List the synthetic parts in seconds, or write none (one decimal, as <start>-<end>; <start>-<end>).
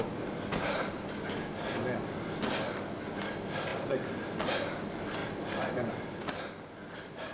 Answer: 3.7-4.7; 5.2-5.7